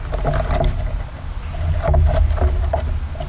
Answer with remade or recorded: recorded